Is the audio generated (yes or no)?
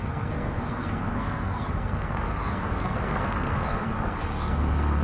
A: yes